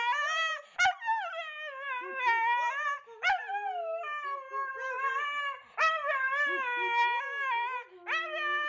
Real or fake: real